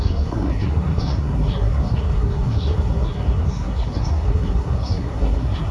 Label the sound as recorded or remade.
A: remade